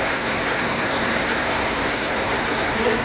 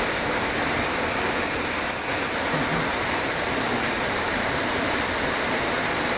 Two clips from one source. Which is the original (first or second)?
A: second